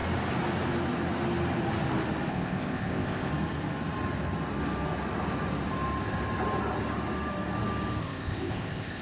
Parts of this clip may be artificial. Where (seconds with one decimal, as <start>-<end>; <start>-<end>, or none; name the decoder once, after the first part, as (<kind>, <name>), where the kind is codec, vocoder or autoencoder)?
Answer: 2.3-3.3 (codec, ZipCodec); 8.0-9.0